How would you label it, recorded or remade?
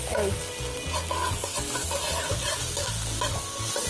recorded